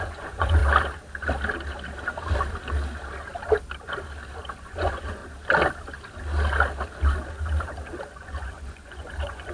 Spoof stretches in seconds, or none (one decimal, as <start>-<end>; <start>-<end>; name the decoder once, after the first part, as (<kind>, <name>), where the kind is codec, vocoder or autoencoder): 0.0-0.6 (vocoder, Vocos); 4.5-5.2; 8.1-9.5

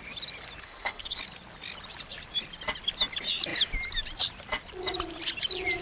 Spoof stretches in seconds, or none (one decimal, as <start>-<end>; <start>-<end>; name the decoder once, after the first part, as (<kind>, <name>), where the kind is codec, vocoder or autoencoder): 0.6-1.2 (codec, SNAC)

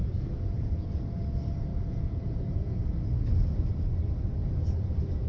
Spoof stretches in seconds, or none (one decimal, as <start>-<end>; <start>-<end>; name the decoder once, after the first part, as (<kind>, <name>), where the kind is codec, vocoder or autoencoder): 0.0-0.9 (vocoder, Vocos); 1.7-2.9

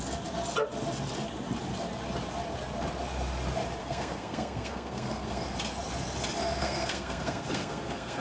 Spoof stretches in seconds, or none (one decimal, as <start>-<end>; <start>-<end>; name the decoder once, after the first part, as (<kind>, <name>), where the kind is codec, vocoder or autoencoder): 3.8-5.4 (codec, SNAC); 6.6-8.2